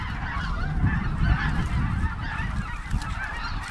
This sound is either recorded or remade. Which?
recorded